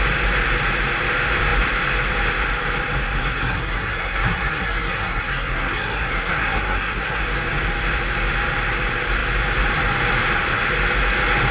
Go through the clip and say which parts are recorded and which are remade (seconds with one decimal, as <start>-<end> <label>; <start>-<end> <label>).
0.0-3.2 recorded; 3.2-7.2 remade; 7.2-11.5 recorded